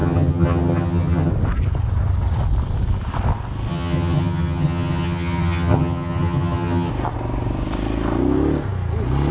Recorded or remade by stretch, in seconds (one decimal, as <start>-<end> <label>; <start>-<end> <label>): 0.0-1.3 remade; 1.3-3.7 recorded; 3.7-6.9 remade; 6.9-9.3 recorded